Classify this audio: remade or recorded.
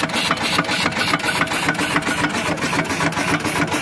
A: recorded